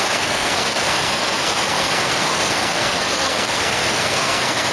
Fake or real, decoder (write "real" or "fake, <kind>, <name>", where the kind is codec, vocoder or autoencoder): fake, codec, SNAC